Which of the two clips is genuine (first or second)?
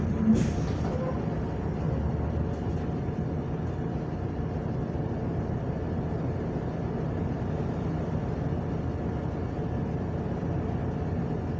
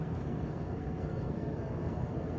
first